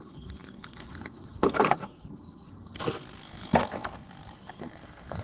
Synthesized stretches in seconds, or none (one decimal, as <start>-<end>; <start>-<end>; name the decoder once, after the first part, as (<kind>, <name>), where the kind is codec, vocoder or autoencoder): 0.0-5.2 (codec, SNAC)